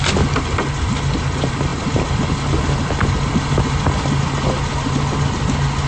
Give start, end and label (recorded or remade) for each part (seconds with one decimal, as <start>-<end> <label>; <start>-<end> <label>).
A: 0.0-5.9 recorded